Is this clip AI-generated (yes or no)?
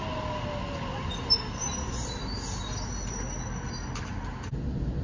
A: no